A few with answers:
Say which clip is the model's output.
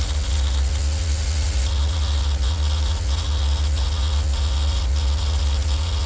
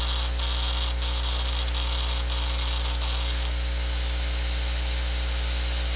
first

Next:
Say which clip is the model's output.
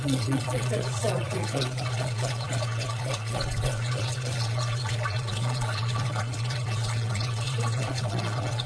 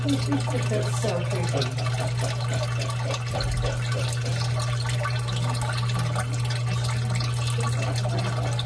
first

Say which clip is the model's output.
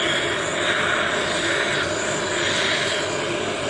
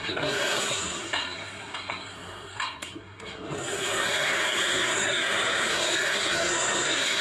second